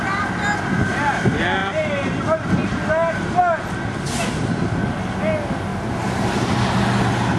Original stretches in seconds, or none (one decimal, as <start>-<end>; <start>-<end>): 0.0-1.6; 2.2-2.6; 3.4-5.7; 6.5-7.4